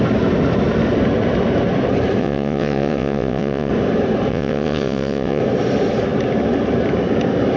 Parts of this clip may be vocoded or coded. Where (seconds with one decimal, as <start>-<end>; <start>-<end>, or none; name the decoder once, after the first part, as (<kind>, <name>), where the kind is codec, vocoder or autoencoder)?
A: 2.2-3.7 (vocoder, WaveNeXt); 4.3-5.4